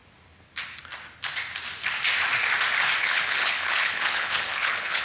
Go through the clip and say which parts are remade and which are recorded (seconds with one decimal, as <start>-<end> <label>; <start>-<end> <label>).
0.0-3.0 recorded; 3.0-5.0 remade